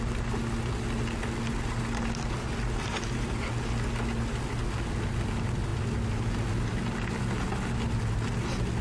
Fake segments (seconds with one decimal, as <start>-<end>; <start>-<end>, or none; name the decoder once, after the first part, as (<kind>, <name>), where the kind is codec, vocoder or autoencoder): none